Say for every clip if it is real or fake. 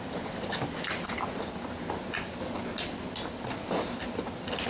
real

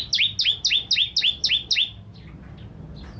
real